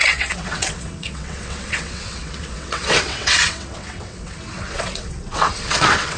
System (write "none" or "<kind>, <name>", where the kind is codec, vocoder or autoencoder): vocoder, WaveNeXt